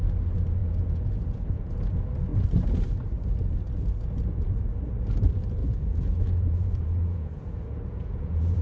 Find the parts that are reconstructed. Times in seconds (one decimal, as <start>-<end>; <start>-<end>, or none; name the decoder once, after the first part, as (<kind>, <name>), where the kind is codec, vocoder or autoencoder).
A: 0.6-1.7 (vocoder, Vocos); 5.6-8.6